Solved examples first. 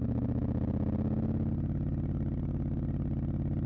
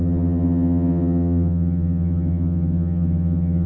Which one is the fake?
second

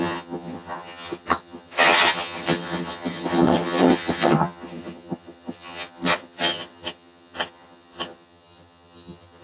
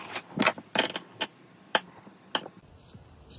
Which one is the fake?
first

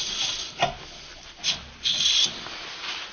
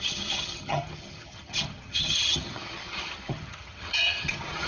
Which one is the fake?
second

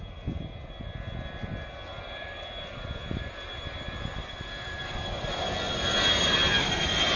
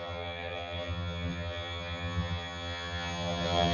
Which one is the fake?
second